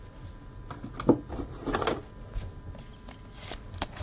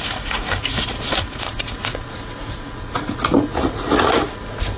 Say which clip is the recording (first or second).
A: first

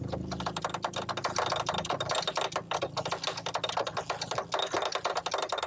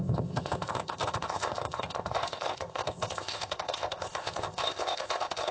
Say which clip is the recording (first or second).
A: first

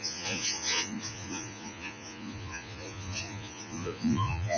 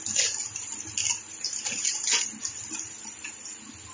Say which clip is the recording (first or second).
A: second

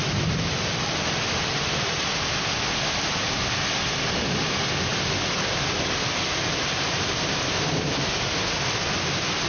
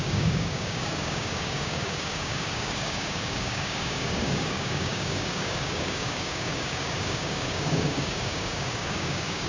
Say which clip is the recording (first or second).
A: first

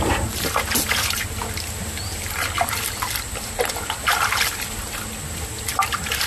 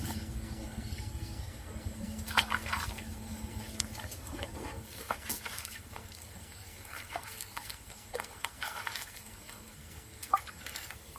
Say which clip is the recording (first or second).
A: first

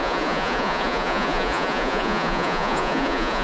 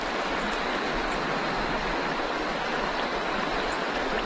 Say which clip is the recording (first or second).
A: second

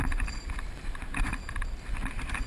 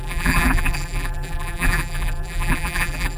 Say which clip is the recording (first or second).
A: first